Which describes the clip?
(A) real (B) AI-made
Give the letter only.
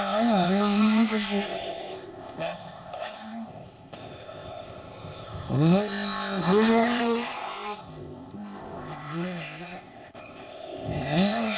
B